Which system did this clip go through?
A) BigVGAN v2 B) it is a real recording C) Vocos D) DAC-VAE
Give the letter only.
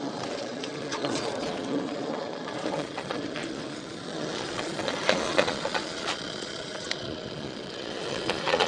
C